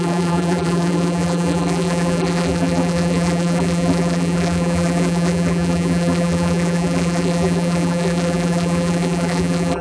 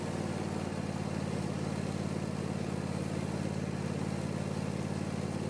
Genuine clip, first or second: second